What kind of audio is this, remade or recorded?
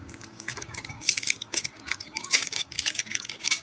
remade